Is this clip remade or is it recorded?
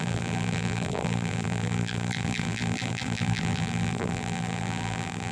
remade